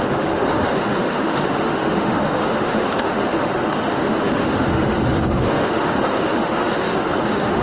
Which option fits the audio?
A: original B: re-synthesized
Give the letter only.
B